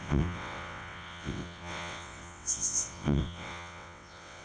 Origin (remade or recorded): remade